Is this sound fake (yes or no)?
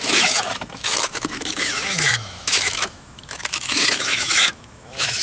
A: yes